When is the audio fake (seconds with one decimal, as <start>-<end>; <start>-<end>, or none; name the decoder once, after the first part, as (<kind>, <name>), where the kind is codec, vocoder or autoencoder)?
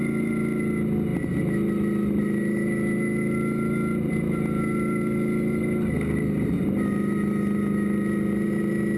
none